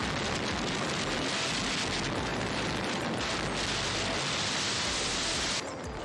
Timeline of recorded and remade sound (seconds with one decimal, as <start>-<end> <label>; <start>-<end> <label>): 0.0-6.0 recorded